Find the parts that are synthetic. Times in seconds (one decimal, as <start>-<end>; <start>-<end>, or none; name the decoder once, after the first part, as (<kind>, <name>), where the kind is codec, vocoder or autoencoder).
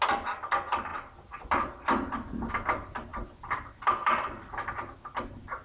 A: 3.1-5.6 (vocoder, BigVGAN v2)